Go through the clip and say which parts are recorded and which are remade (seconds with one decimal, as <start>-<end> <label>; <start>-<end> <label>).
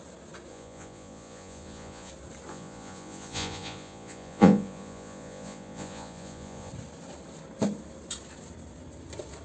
0.0-0.5 recorded; 0.5-2.1 remade; 2.1-2.5 recorded; 2.5-6.7 remade; 6.7-9.4 recorded